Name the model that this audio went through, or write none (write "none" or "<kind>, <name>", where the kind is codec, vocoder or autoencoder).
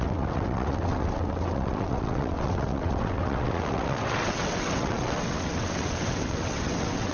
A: vocoder, WaveNeXt